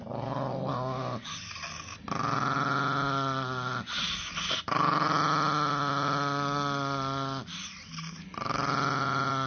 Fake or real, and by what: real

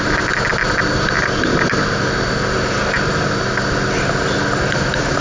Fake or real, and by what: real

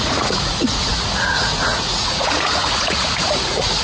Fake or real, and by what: fake, vocoder, Vocos